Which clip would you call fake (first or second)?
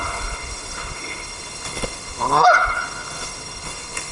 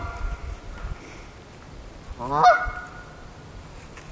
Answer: first